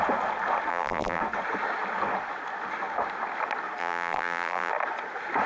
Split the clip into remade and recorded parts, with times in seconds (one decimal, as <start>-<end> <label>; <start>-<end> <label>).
0.0-0.7 recorded; 0.7-1.2 remade; 1.2-3.8 recorded; 3.8-4.7 remade; 4.7-5.5 recorded